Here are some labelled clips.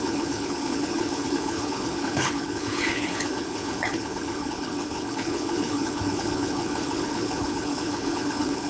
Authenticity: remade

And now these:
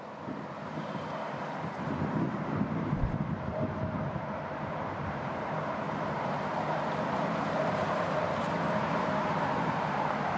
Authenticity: remade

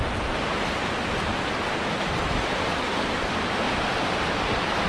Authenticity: recorded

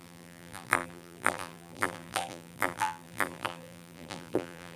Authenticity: remade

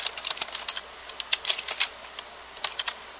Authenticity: recorded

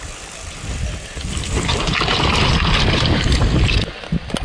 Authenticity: remade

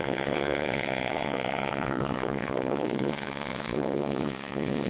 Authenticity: remade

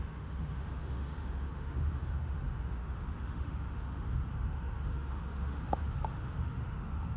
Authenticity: remade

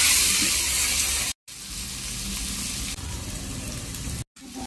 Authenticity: recorded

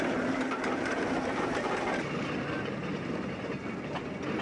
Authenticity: recorded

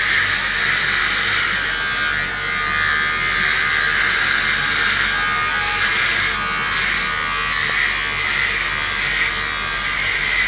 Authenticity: recorded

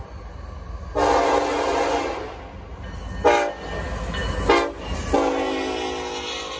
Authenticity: recorded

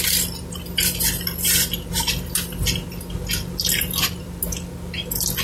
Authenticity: recorded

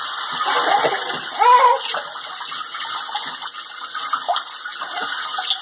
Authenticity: recorded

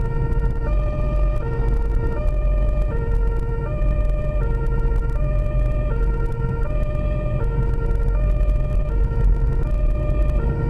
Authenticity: recorded